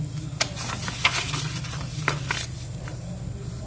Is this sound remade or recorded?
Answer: recorded